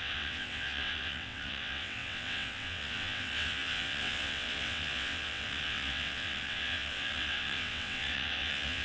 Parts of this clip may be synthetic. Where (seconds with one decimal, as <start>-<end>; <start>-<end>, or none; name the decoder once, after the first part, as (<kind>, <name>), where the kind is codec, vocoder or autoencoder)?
0.0-8.8 (vocoder, WaveNeXt)